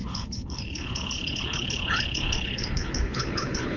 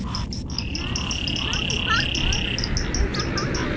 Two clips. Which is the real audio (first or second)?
second